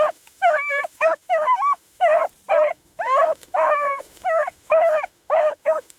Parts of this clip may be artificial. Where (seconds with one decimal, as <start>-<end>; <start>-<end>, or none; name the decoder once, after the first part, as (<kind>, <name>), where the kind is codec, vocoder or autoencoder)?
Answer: 0.0-2.2 (autoencoder, DAC-VAE); 2.7-6.0

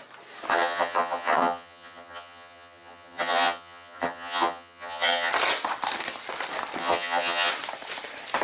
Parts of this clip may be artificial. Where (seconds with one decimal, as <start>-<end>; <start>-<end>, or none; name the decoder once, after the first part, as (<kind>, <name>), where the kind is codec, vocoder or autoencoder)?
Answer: 0.5-5.3 (vocoder, HiFi-GAN); 6.8-7.5